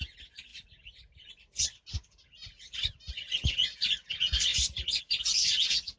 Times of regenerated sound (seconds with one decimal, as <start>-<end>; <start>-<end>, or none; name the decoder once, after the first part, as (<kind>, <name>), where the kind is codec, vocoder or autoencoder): 0.5-4.1 (vocoder, BigVGAN v2); 4.5-5.0